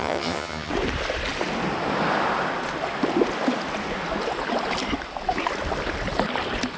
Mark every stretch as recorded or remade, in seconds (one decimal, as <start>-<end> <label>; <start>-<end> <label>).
0.0-0.7 remade; 0.7-6.8 recorded

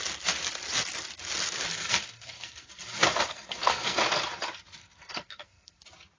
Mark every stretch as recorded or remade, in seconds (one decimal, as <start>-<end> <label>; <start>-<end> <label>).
0.0-1.7 recorded; 1.7-2.7 remade; 2.7-3.3 recorded; 3.3-4.0 remade; 4.0-4.8 recorded; 4.8-5.8 remade; 5.8-6.2 recorded

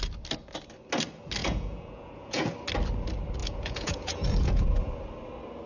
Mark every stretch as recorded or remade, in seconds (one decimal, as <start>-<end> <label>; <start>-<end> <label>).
0.0-1.4 recorded; 1.4-2.5 remade; 2.5-3.4 recorded; 3.4-4.9 remade; 4.9-5.7 recorded

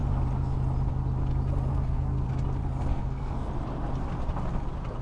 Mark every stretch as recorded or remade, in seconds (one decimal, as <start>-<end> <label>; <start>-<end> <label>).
0.0-1.7 recorded; 1.7-2.3 remade; 2.3-2.9 recorded; 2.9-3.5 remade; 3.5-5.0 recorded